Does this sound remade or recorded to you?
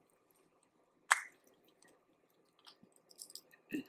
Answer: recorded